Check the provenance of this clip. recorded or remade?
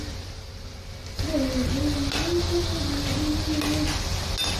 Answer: recorded